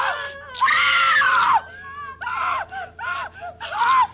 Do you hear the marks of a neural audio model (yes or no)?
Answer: no